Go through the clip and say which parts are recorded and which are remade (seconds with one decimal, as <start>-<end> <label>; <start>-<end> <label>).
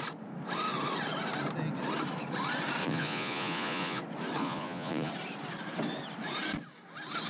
0.0-2.8 recorded; 2.8-4.0 remade; 4.0-4.4 recorded; 4.4-5.1 remade; 5.1-7.3 recorded